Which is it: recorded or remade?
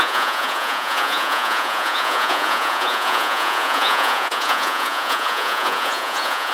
remade